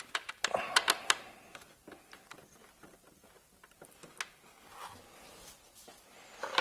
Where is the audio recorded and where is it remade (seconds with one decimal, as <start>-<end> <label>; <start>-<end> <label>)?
0.0-6.6 recorded